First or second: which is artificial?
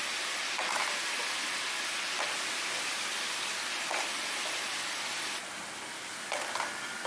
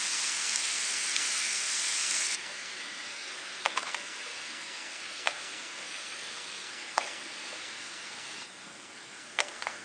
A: second